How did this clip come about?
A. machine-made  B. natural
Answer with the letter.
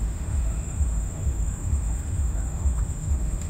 A